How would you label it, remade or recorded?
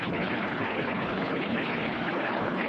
remade